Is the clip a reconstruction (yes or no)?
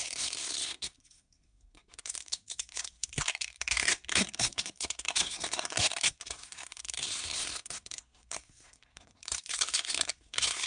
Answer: yes